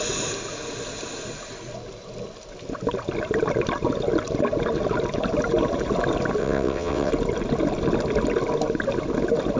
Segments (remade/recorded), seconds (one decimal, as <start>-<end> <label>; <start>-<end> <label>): 0.0-6.4 recorded; 6.4-7.1 remade; 7.1-9.6 recorded